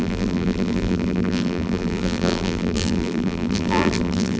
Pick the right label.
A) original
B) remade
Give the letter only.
B